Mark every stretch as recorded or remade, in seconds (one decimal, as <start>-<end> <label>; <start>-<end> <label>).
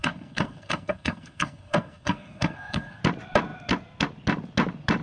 0.0-3.0 remade; 3.0-5.0 recorded